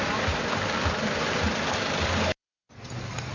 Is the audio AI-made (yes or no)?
no